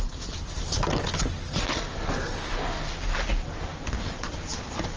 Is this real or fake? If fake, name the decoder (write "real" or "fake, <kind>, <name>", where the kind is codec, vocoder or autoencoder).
real